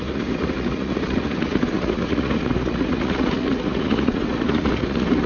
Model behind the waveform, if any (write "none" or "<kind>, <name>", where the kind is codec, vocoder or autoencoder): vocoder, Vocos